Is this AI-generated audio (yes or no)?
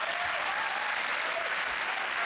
no